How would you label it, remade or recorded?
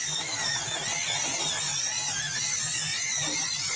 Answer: recorded